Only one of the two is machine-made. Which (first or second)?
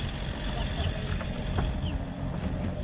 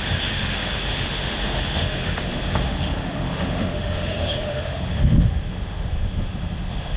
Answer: second